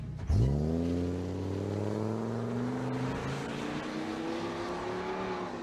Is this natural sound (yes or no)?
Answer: yes